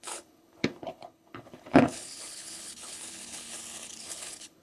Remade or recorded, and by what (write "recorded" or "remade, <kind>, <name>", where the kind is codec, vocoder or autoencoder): remade, codec, HILCodec